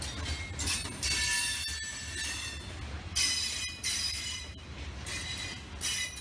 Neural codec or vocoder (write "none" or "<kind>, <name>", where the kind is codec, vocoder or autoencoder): none